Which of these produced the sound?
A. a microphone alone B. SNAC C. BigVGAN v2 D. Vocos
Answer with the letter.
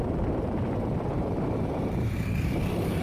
C